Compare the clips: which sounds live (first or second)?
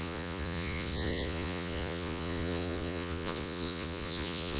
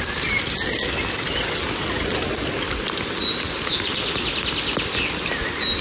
second